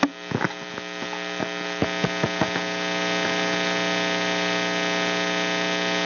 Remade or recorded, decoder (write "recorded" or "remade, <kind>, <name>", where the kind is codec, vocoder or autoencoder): recorded